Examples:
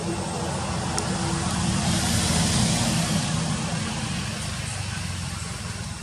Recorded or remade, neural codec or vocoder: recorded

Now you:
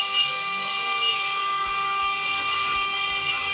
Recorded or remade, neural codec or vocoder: remade, codec, DAC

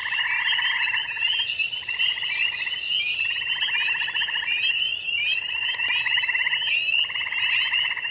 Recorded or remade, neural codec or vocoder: remade, vocoder, BigVGAN v2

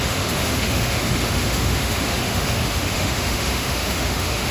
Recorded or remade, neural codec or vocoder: remade, autoencoder, DAC-VAE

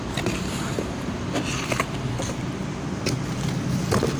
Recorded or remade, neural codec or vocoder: recorded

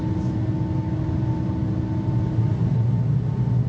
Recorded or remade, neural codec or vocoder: recorded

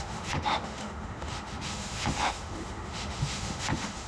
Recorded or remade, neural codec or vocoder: remade, autoencoder, DAC-VAE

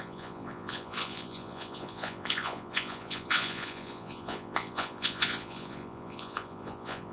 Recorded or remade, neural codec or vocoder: remade, vocoder, Vocos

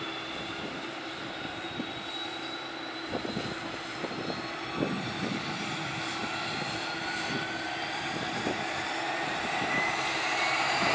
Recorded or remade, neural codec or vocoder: remade, vocoder, BigVGAN v2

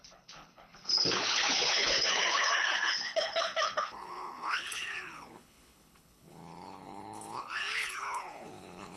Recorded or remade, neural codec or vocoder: remade, codec, HILCodec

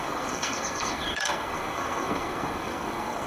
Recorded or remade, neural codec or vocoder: remade, codec, SNAC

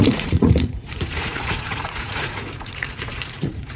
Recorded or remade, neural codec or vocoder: remade, vocoder, Vocos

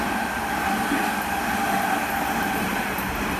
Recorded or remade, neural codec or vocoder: recorded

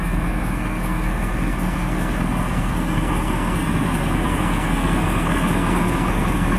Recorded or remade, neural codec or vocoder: remade, codec, SNAC